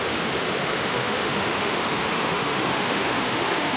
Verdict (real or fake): fake